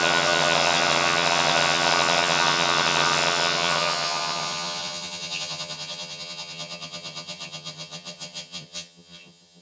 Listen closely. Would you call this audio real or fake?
fake